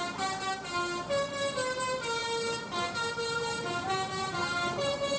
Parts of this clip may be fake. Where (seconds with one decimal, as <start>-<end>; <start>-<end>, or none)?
none